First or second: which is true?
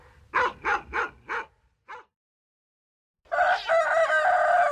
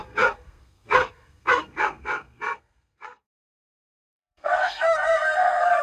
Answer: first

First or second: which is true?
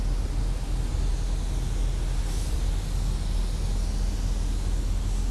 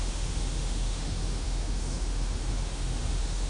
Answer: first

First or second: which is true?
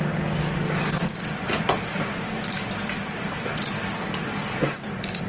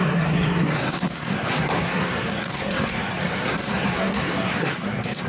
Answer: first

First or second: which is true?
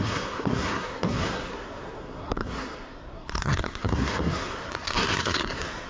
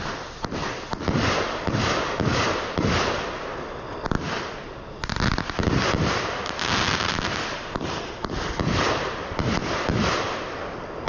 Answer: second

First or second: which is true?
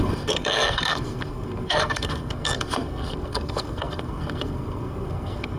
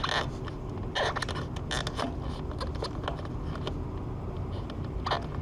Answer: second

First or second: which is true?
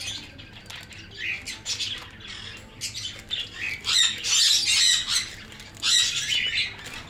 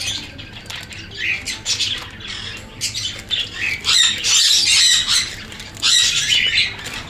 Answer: first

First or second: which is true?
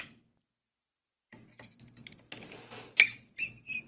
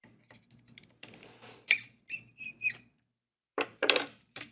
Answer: first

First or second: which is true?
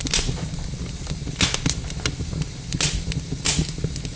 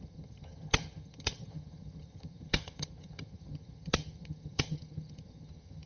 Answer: first